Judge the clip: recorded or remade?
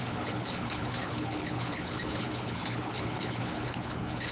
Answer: remade